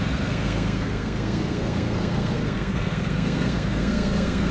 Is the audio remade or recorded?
remade